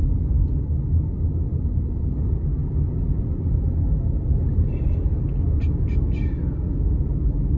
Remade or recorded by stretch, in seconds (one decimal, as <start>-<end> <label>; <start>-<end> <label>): 0.0-7.6 recorded

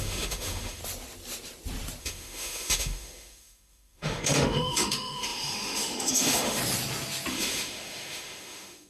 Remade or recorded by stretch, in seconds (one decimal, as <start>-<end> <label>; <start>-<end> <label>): 0.0-0.8 remade; 0.8-2.0 recorded; 2.0-6.6 remade; 6.6-7.3 recorded; 7.3-8.9 remade

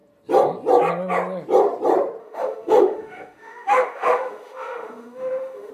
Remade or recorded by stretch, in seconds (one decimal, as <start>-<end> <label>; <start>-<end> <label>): 0.0-2.2 recorded; 2.2-5.7 remade